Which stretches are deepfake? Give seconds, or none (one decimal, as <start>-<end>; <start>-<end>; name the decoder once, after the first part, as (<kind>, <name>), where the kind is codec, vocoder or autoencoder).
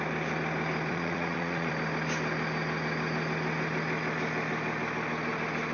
0.9-1.7 (vocoder, Vocos)